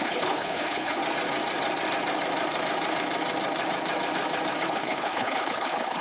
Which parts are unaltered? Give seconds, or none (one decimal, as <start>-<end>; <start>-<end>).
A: 1.0-4.6